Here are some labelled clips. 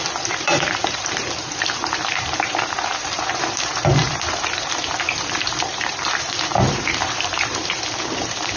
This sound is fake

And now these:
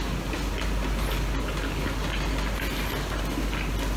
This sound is real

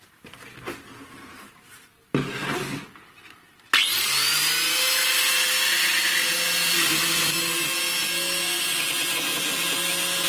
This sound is real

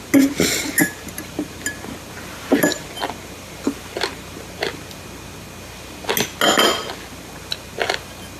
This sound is real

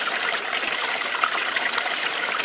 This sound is fake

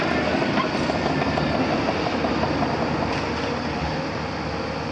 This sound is fake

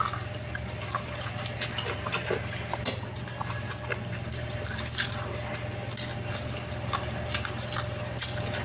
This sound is real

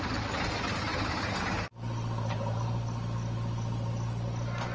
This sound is real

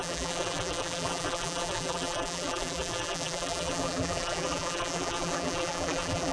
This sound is fake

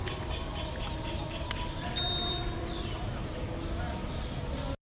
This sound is real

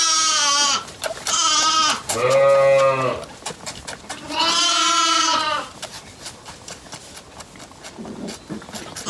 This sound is real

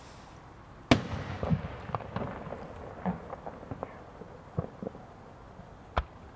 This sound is real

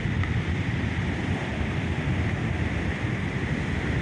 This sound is fake